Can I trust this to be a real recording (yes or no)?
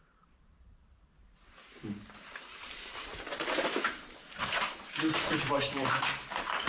no